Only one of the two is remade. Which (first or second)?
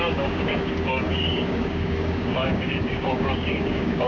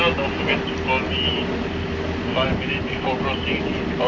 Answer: first